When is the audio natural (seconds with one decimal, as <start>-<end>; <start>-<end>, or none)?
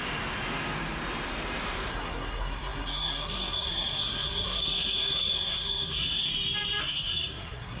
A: 0.0-1.9; 6.3-6.8